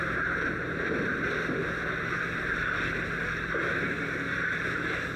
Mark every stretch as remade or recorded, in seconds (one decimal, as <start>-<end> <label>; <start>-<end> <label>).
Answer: 0.0-5.2 recorded

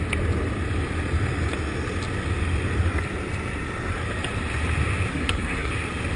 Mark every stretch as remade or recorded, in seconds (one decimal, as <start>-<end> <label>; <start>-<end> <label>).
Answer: 0.0-5.1 recorded; 5.1-5.7 remade; 5.7-6.2 recorded

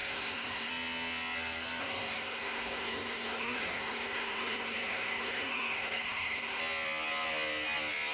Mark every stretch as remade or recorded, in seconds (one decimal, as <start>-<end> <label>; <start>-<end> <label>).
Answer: 0.0-0.7 remade; 0.7-1.8 recorded; 1.8-6.6 remade; 6.6-8.1 recorded

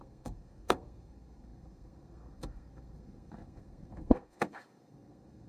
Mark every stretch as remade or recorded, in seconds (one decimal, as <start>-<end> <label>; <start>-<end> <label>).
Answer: 0.0-5.5 remade

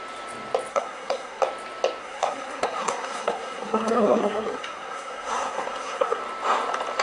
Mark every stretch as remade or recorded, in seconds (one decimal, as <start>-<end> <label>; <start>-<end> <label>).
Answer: 0.0-0.7 recorded; 0.7-1.4 remade; 1.4-2.0 recorded; 2.0-6.2 remade; 6.2-7.0 recorded

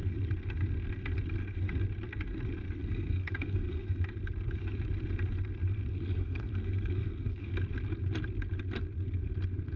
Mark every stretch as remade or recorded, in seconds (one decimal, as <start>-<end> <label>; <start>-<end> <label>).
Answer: 0.0-2.8 recorded; 2.8-4.0 remade; 4.0-5.9 recorded; 5.9-7.5 remade; 7.5-9.8 recorded